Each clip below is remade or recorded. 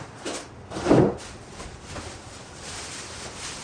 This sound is recorded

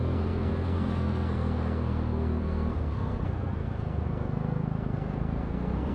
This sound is remade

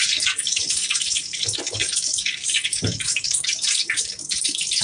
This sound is remade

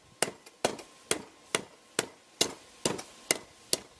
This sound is recorded